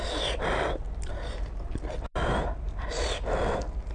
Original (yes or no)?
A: yes